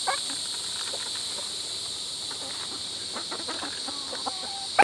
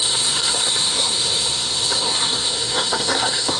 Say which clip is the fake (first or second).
second